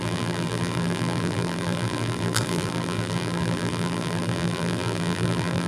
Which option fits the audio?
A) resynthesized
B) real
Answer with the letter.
A